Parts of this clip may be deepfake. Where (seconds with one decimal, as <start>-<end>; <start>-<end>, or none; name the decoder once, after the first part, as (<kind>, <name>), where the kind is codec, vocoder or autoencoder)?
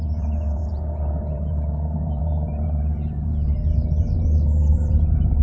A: 0.0-5.4 (vocoder, BigVGAN v2)